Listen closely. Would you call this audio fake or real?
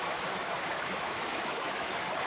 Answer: fake